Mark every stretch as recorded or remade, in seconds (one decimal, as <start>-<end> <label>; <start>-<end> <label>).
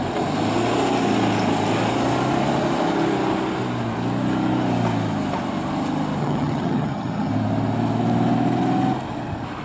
0.0-6.2 recorded; 6.2-7.3 remade; 7.3-9.6 recorded